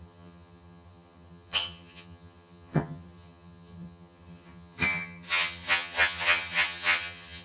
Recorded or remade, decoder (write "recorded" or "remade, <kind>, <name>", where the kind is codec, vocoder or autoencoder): remade, vocoder, HiFi-GAN